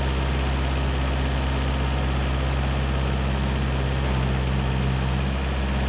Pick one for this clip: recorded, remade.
recorded